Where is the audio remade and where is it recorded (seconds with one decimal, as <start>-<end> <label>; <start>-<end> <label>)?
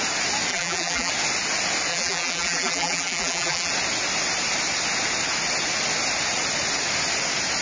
0.0-0.5 recorded; 0.5-1.1 remade; 1.1-1.9 recorded; 1.9-3.7 remade; 3.7-7.6 recorded